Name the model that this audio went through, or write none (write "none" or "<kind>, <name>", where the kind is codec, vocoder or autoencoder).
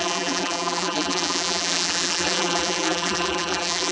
vocoder, BigVGAN v2